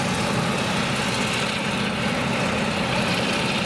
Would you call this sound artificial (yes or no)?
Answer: no